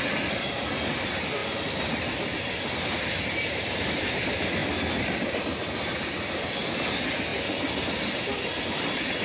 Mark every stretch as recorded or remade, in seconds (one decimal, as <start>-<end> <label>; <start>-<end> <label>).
0.0-1.4 remade; 1.4-3.8 recorded; 3.8-4.6 remade; 4.6-5.4 recorded; 5.4-7.3 remade; 7.3-7.8 recorded; 7.8-9.2 remade